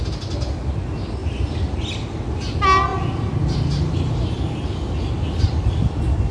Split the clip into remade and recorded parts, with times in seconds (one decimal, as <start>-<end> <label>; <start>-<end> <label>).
0.0-1.2 recorded; 1.2-1.8 remade; 1.8-2.9 recorded; 2.9-3.9 remade; 3.9-6.3 recorded